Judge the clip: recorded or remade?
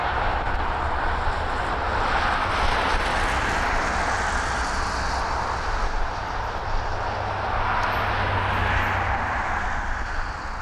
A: recorded